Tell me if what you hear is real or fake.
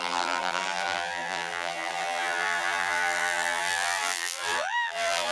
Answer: fake